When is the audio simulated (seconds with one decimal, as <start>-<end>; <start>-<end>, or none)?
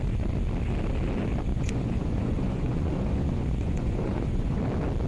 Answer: 1.5-4.6